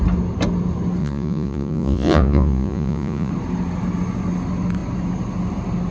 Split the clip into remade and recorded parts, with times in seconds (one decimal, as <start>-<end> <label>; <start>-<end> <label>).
0.0-1.0 recorded; 1.0-3.3 remade; 3.3-5.9 recorded